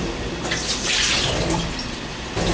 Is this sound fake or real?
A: fake